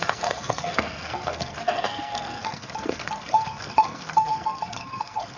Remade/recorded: remade